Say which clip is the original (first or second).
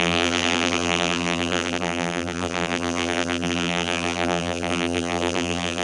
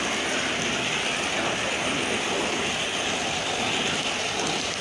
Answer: second